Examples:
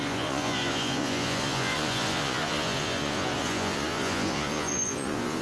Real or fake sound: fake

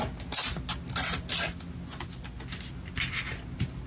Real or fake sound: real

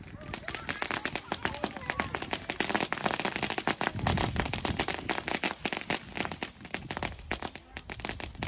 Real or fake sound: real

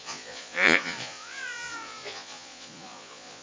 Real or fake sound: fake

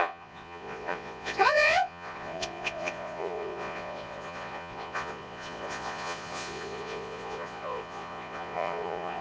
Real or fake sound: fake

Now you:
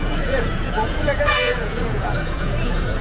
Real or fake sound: fake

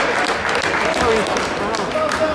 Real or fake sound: real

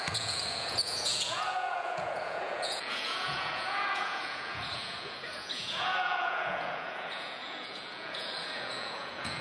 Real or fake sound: fake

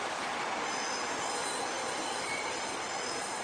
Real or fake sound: real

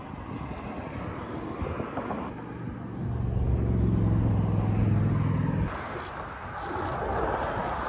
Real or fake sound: real